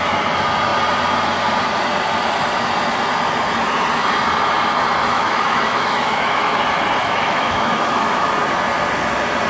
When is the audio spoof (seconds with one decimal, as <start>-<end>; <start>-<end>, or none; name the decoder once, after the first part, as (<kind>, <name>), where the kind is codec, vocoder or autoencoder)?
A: 5.1-6.6 (autoencoder, DAC-VAE); 7.0-8.3